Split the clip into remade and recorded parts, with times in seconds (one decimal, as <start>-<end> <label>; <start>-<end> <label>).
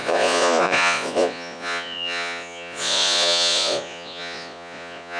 0.0-5.2 remade